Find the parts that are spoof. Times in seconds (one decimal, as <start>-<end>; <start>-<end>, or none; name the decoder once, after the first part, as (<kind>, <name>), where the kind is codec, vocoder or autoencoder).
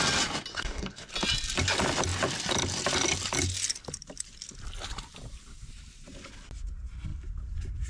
0.5-1.1 (codec, DAC)